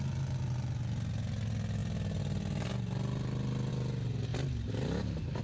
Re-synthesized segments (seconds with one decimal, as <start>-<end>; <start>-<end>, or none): none